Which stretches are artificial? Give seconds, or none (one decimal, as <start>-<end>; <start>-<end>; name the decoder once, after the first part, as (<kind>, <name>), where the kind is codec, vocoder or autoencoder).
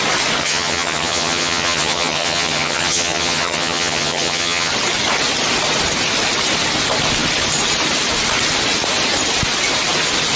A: 0.4-4.7 (vocoder, HiFi-GAN)